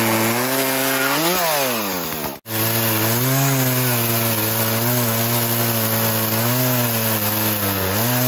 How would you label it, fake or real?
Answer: real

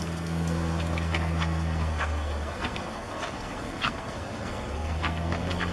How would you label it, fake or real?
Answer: fake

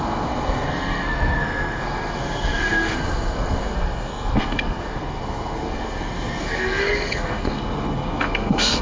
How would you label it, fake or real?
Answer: fake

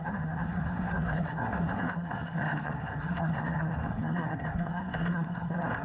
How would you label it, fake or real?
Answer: fake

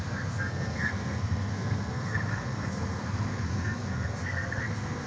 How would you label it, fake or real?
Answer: fake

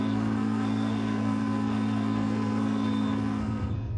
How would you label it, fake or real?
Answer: fake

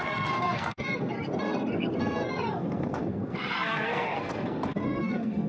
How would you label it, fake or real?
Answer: fake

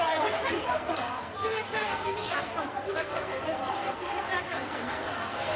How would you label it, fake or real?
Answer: fake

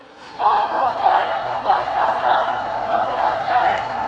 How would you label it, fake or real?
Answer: fake